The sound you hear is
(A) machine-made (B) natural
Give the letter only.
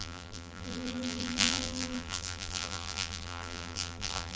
A